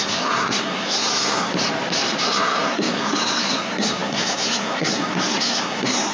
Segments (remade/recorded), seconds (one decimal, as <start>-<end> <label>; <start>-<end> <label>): 0.0-1.5 remade; 1.5-2.2 recorded; 2.2-6.1 remade